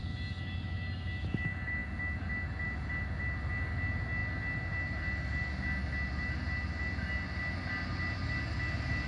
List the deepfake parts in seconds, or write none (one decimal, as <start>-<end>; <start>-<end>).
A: none